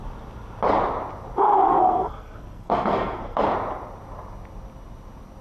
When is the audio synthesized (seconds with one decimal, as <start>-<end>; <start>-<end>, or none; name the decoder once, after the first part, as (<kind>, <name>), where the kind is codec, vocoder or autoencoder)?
1.7-3.4 (codec, SNAC)